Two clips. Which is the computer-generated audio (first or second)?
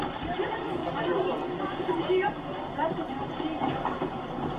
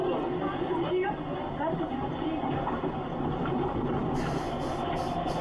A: first